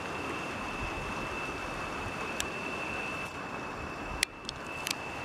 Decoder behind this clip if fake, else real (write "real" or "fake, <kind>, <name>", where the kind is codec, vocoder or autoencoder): real